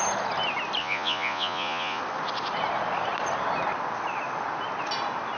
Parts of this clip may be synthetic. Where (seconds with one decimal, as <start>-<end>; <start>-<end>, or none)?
0.8-2.0